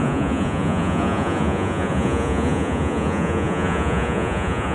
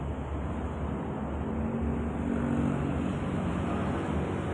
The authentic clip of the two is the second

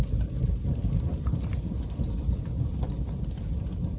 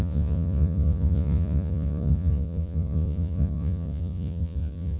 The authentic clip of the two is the first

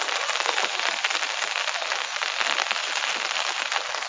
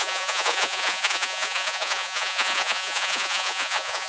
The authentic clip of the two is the first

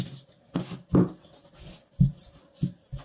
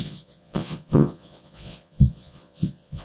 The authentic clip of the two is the first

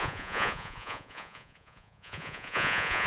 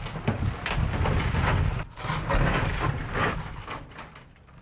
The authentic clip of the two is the second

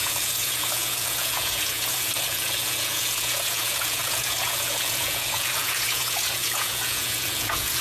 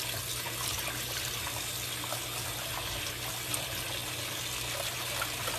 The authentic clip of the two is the second